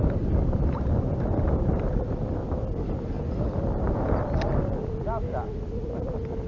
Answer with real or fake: real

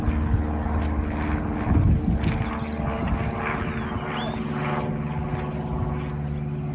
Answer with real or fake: real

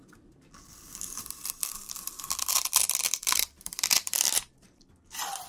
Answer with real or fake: fake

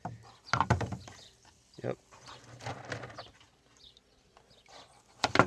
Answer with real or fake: real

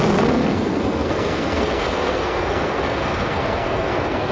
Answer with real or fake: fake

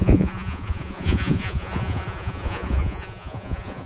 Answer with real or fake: fake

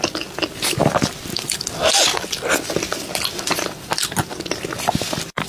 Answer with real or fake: real